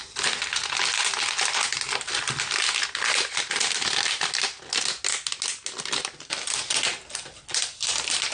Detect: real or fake real